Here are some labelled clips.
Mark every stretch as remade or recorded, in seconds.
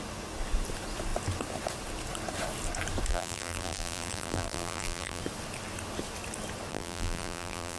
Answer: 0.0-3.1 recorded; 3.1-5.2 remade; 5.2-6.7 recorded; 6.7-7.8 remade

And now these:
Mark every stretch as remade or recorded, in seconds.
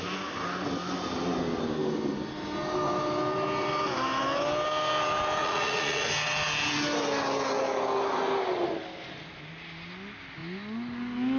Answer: 0.0-5.4 recorded; 5.4-6.1 remade; 6.1-11.4 recorded